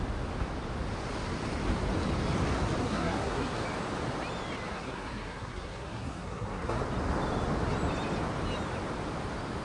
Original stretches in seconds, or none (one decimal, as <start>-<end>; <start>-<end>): 0.0-2.8; 3.6-4.7; 6.8-9.6